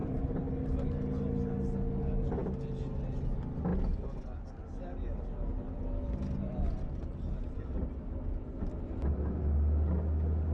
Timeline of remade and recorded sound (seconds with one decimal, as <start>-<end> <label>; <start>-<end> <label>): 0.0-0.5 remade; 0.5-10.5 recorded